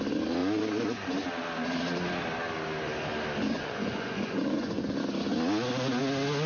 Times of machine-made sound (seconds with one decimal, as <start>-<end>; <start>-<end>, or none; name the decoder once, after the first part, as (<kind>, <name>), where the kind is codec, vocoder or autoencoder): 0.4-1.1 (vocoder, Vocos); 3.4-4.8